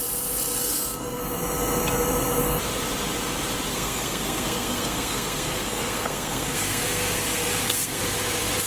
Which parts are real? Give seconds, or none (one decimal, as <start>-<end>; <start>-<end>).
0.0-0.6; 1.2-3.7; 8.0-8.7